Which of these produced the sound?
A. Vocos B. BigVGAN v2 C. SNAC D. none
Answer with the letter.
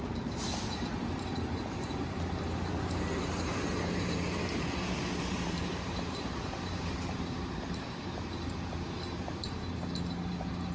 B